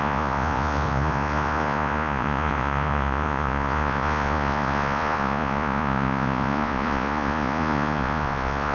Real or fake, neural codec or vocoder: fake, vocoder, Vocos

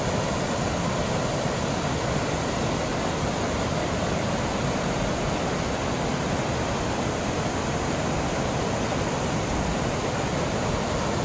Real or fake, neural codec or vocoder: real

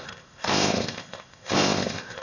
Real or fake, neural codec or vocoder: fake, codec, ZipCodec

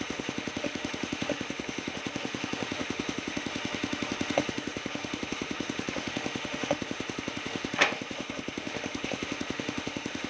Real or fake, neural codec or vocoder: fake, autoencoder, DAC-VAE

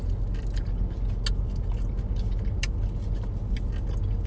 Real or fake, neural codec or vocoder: real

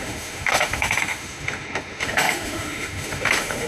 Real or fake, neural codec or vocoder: fake, autoencoder, DAC-VAE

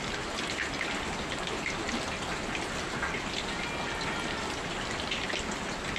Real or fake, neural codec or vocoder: real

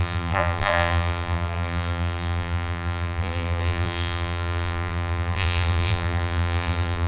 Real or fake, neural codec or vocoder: fake, vocoder, BigVGAN v2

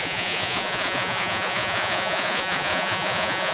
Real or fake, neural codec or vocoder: fake, vocoder, Vocos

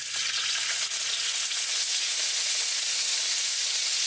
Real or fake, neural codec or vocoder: fake, vocoder, Vocos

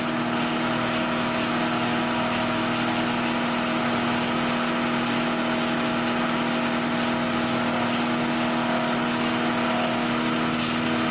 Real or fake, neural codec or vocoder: real